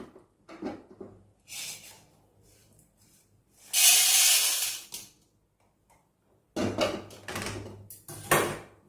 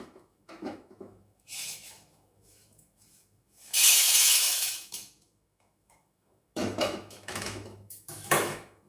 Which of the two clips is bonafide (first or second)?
first